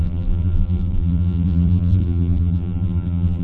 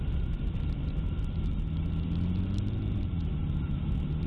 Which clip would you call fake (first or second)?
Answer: first